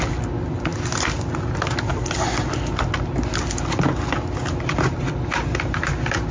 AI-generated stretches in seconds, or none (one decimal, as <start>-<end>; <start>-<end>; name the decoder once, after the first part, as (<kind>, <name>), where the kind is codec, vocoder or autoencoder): none